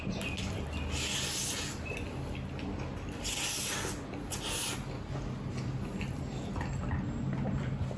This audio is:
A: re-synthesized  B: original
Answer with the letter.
B